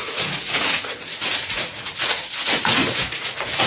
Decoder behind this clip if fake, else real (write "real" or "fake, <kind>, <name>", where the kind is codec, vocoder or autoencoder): fake, vocoder, Vocos